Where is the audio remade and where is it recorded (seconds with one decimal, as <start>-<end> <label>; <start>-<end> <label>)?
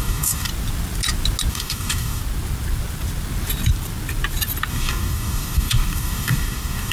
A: 0.0-0.5 remade; 0.5-1.5 recorded; 1.5-2.2 remade; 2.2-4.7 recorded; 4.7-6.9 remade